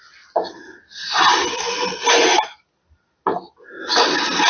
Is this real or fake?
real